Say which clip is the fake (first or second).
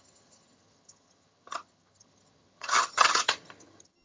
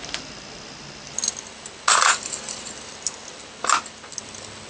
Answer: first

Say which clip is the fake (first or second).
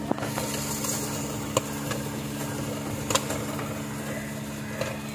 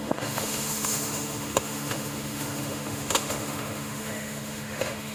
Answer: second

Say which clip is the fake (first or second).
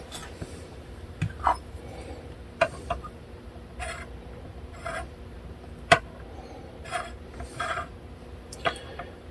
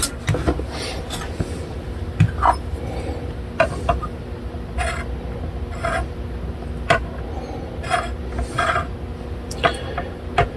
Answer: first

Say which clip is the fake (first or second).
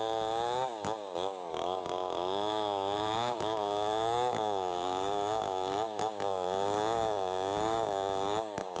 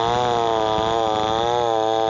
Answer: first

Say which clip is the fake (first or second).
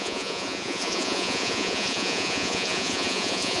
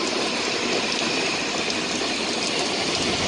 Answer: first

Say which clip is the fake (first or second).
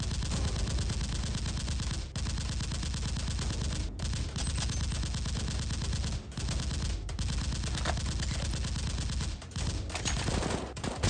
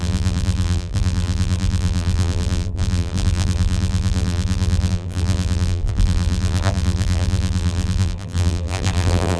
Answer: second